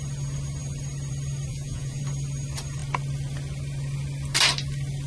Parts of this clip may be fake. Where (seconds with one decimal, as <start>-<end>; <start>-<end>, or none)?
1.5-2.0